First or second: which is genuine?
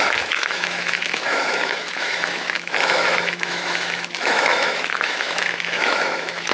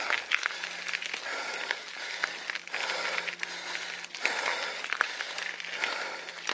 second